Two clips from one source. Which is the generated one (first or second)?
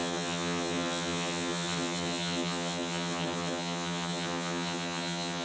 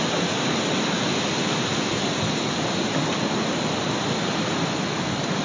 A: first